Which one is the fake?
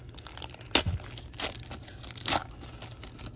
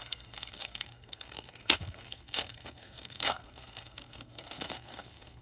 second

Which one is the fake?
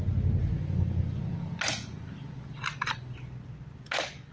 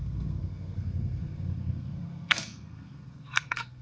second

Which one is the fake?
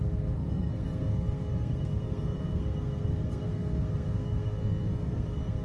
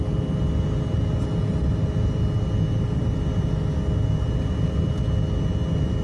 first